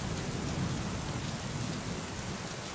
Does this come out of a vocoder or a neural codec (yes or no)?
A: no